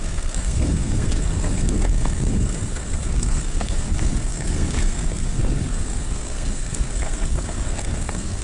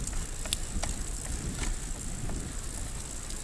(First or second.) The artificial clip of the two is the first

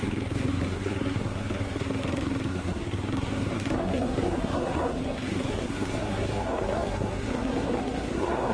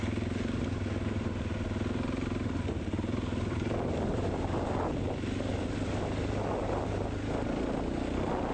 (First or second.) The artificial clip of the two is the first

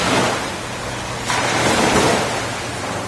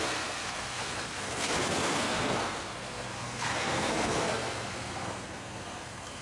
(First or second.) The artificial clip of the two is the second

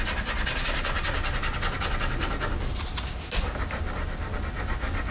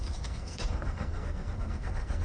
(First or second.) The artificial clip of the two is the second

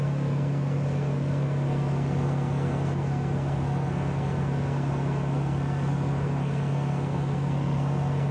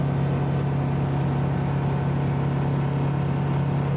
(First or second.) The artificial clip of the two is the first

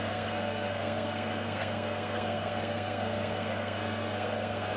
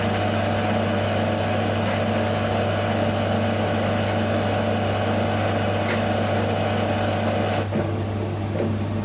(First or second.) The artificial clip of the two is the first